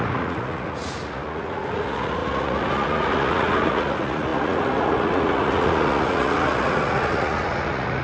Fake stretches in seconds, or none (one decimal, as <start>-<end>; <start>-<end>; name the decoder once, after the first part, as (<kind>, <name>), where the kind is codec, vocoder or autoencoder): 0.0-8.0 (vocoder, Vocos)